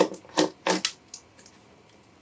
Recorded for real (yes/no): yes